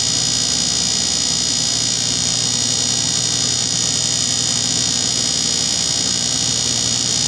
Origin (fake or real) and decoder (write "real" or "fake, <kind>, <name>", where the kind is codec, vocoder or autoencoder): real